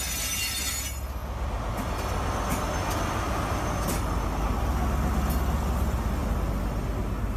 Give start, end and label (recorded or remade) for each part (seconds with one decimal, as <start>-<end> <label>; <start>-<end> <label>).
0.0-7.4 recorded